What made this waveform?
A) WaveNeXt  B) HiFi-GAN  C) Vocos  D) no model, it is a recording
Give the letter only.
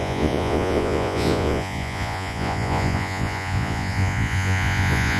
C